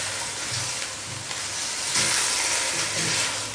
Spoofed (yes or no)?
no